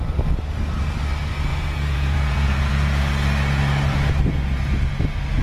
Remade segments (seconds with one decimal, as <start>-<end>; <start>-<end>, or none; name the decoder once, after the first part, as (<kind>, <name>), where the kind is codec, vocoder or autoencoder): 1.5-2.7 (vocoder, Vocos)